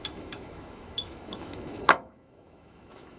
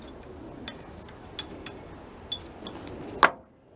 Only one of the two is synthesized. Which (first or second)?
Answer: first